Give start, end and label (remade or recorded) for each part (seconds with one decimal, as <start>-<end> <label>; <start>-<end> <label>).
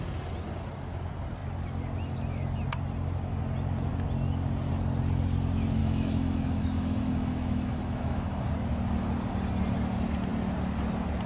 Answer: 0.0-5.8 recorded; 5.8-8.4 remade; 8.4-11.3 recorded